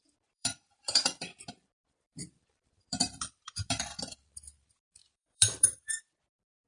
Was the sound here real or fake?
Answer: fake